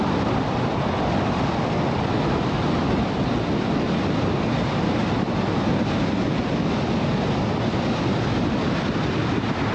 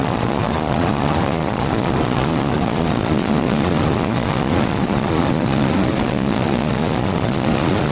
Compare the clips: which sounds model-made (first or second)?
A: second